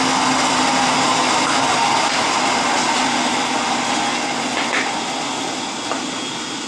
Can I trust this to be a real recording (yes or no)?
yes